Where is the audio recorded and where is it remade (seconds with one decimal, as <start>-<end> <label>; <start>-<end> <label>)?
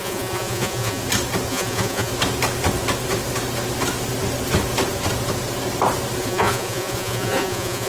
0.0-1.0 remade; 1.0-1.5 recorded; 1.5-2.1 remade; 2.1-6.2 recorded; 6.2-7.9 remade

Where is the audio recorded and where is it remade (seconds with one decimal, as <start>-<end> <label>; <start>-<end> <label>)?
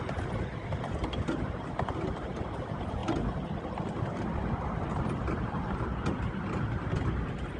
0.0-7.6 recorded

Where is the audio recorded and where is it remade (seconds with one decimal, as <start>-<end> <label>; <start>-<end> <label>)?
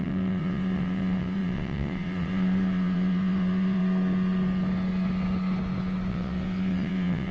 0.0-3.8 remade; 3.8-6.1 recorded; 6.1-7.3 remade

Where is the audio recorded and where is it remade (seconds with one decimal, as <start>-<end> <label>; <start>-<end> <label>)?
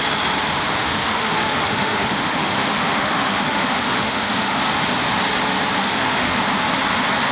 0.0-0.8 recorded; 0.8-4.6 remade; 4.6-5.8 recorded; 5.8-6.4 remade; 6.4-7.3 recorded